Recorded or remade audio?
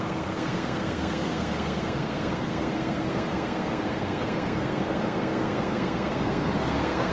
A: remade